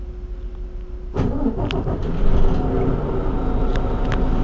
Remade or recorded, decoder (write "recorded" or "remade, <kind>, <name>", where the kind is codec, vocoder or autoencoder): recorded